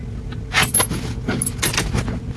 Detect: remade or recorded recorded